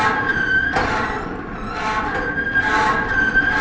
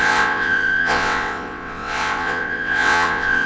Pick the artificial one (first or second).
second